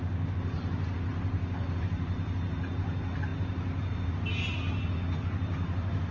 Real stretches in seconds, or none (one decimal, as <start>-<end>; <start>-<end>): 0.0-6.1